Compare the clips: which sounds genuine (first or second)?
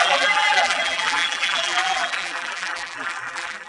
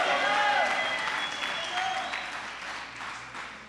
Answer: second